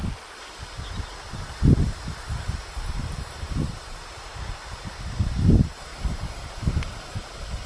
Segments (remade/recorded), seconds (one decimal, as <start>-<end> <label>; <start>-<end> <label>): 0.0-7.7 recorded